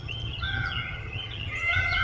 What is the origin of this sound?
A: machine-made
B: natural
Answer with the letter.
A